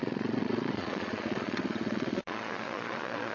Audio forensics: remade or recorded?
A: remade